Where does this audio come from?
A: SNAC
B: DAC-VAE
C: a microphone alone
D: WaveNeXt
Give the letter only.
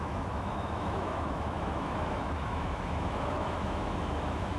B